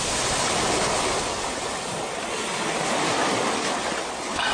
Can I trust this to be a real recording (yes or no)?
yes